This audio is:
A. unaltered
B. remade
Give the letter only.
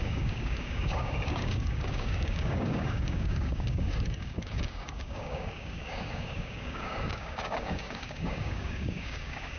B